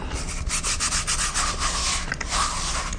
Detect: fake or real real